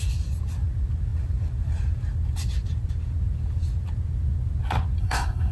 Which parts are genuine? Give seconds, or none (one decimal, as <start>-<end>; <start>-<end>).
0.0-5.0